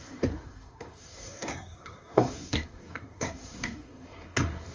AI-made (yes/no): yes